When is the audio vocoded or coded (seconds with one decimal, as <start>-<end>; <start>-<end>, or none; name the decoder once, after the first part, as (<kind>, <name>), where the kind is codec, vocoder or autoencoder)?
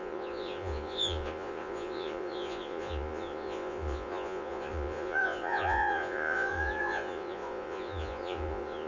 0.0-8.9 (vocoder, Vocos)